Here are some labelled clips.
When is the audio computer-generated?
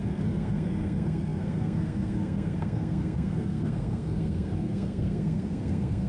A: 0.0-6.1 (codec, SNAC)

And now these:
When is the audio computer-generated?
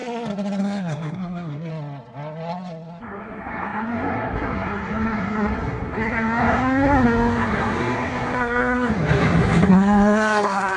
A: 0.6-1.7 (codec, SNAC); 3.0-10.8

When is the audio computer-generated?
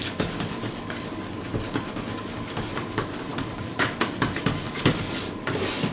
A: 0.0-5.9 (codec, DAC)